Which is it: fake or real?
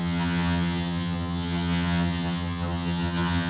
fake